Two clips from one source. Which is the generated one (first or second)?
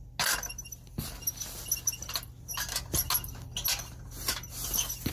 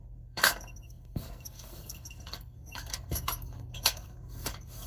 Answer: second